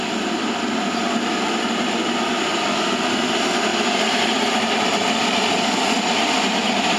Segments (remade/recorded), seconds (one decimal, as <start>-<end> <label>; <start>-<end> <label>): 0.0-3.7 recorded; 3.7-5.1 remade; 5.1-7.0 recorded

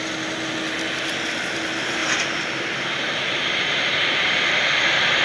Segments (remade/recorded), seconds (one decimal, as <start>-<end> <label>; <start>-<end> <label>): 0.0-2.0 recorded; 2.0-5.2 remade